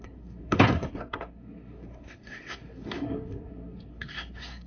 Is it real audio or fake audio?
fake